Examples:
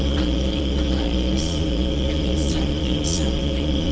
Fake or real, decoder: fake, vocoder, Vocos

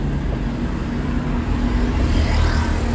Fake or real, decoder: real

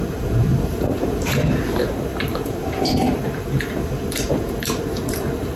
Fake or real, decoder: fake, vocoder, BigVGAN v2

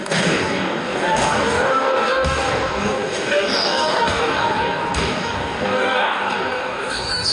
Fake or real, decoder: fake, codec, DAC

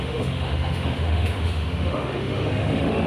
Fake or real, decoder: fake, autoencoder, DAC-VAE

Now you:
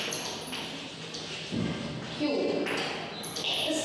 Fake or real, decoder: real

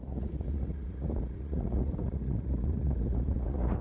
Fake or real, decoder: fake, vocoder, Vocos